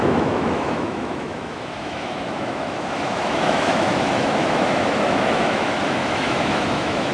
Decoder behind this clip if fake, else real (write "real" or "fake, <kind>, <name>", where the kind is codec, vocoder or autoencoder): fake, autoencoder, DAC-VAE